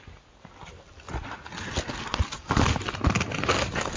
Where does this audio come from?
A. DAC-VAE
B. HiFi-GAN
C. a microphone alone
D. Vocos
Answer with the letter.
C